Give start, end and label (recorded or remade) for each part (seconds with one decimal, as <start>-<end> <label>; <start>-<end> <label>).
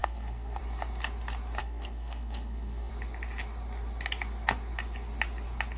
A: 0.0-0.6 remade; 0.6-1.6 recorded; 1.6-2.9 remade; 2.9-5.8 recorded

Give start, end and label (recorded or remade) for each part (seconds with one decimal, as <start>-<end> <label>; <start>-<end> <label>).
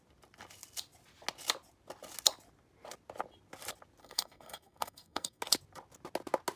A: 0.0-4.0 recorded; 4.0-5.4 remade; 5.4-6.6 recorded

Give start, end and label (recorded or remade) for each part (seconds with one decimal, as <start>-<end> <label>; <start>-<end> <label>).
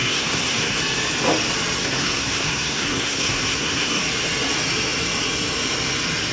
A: 0.0-0.8 remade; 0.8-1.8 recorded; 1.8-4.0 remade; 4.0-6.3 recorded